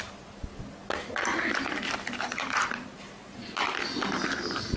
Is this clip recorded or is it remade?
recorded